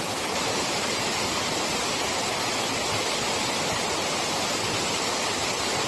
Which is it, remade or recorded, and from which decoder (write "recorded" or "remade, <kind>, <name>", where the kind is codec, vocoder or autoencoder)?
recorded